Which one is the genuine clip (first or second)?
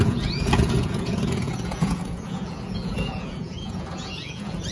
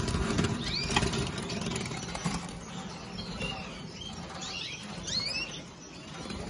second